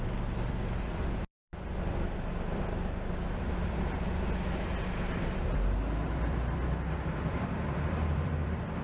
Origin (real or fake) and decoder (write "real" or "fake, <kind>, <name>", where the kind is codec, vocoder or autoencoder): fake, vocoder, BigVGAN v2